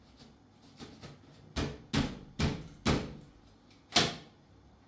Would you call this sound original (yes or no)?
yes